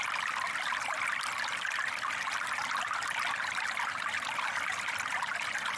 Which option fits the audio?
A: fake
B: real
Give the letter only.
B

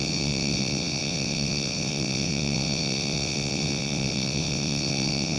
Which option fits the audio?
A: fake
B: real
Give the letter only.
A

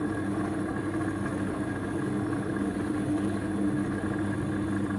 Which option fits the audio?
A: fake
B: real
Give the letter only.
B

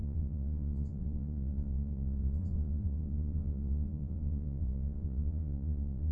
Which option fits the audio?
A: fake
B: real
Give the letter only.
A